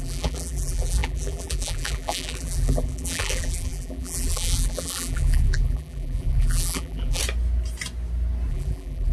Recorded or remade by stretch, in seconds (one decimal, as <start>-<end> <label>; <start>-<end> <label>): 0.0-7.2 remade; 7.2-8.5 recorded; 8.5-9.1 remade